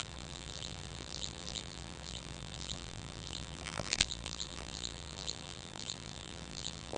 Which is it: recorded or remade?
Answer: remade